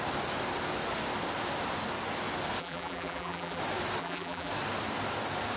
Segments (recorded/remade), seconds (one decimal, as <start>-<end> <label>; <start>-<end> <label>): 0.0-2.6 recorded; 2.6-3.6 remade; 3.6-4.0 recorded; 4.0-4.5 remade; 4.5-5.6 recorded